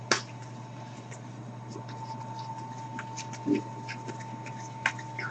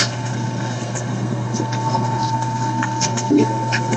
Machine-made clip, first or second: second